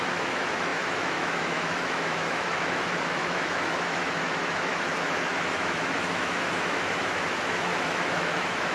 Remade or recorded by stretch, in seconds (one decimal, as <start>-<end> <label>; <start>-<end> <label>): 0.0-8.7 remade